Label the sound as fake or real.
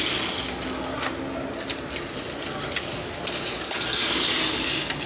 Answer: real